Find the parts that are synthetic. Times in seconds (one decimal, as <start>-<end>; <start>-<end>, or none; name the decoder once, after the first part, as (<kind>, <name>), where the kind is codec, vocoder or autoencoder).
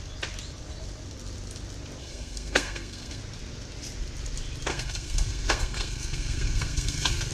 2.0-3.2 (codec, SNAC); 4.7-7.3